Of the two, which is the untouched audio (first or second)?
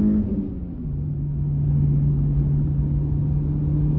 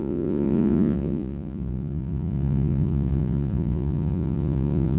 first